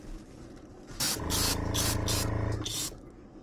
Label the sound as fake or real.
real